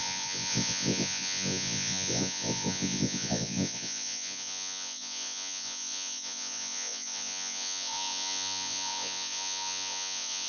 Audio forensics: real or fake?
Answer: fake